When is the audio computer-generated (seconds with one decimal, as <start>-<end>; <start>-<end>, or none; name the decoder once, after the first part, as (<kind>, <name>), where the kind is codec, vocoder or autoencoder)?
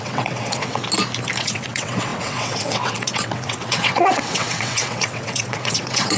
0.0-0.8 (vocoder, WaveNeXt); 1.4-6.2